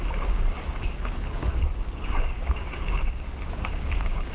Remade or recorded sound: remade